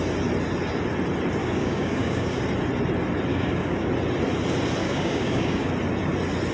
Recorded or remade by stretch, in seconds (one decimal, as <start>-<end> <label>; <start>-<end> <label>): 0.0-1.4 recorded; 1.4-2.4 remade; 2.4-3.3 recorded; 3.3-3.9 remade; 3.9-4.8 recorded; 4.8-5.7 remade; 5.7-6.5 recorded